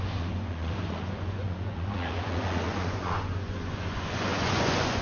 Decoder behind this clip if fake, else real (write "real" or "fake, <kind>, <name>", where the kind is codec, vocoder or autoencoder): fake, vocoder, Vocos